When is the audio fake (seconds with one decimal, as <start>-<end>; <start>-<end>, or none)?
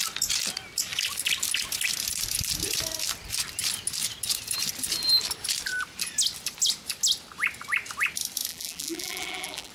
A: 8.5-9.7